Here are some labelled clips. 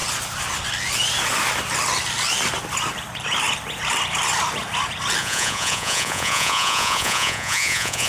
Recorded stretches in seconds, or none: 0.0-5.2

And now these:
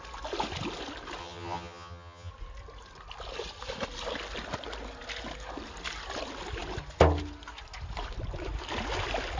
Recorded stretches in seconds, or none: 0.0-1.2; 2.3-9.4

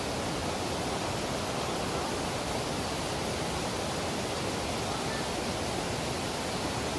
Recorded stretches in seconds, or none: 0.0-7.0

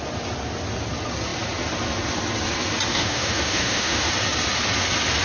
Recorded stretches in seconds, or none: 0.0-2.9; 4.1-5.2

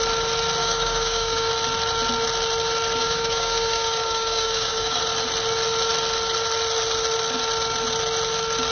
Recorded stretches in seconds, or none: 0.0-0.6; 1.5-3.0; 5.0-8.7